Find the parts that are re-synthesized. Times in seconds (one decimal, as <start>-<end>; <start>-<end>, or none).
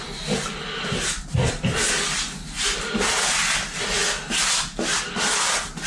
none